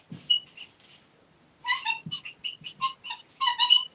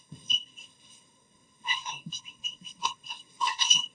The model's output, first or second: second